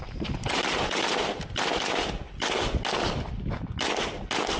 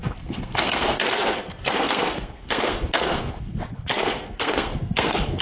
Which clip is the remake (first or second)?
second